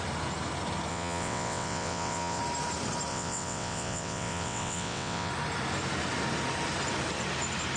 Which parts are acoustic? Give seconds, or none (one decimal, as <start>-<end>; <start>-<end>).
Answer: 0.0-0.9; 2.4-3.1; 5.3-7.8